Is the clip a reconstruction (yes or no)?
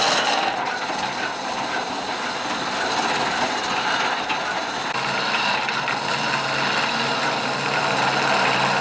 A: no